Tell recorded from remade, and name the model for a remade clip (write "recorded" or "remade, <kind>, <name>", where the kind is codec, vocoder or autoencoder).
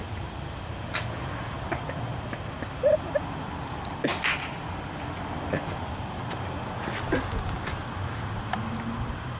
recorded